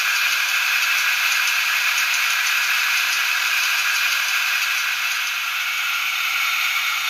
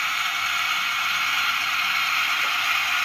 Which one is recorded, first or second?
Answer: second